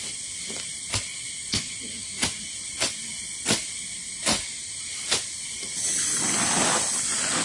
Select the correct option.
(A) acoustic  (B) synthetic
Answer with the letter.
A